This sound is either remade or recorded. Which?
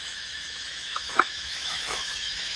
remade